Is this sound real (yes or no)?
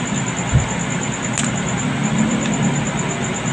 yes